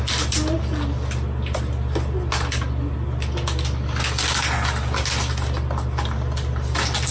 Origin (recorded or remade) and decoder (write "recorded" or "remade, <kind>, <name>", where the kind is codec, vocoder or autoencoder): recorded